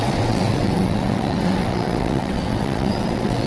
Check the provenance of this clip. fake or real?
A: fake